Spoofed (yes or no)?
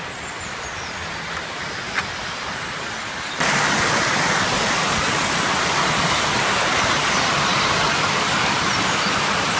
no